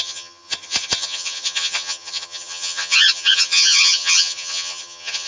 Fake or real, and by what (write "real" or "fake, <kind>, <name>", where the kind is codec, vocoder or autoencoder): fake, vocoder, HiFi-GAN